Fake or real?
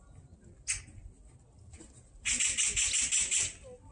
real